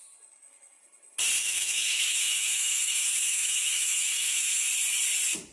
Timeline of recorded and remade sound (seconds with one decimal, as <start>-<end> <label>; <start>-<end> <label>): 0.0-1.4 recorded; 1.4-4.7 remade; 4.7-5.5 recorded